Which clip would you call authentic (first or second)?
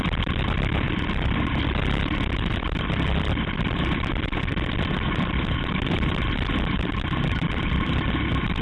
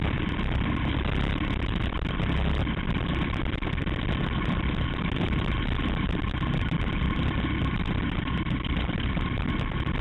second